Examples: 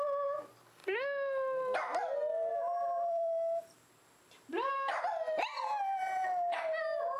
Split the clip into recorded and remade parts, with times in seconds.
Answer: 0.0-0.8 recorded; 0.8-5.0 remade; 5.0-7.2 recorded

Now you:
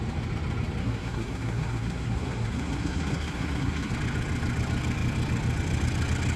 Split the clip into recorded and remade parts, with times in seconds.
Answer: 0.0-0.8 recorded; 0.8-3.9 remade; 3.9-6.4 recorded

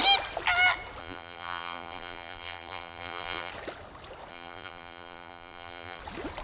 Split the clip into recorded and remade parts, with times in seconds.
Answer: 0.0-1.0 recorded; 1.0-3.5 remade; 3.5-4.3 recorded; 4.3-6.0 remade; 6.0-6.4 recorded